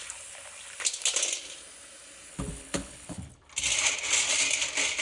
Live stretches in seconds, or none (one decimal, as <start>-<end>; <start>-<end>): 0.0-2.3; 3.3-5.0